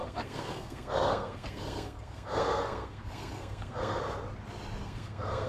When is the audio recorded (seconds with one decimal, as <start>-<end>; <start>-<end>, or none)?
4.0-4.8